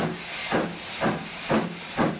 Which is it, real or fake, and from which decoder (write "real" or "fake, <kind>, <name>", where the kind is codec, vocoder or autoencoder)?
real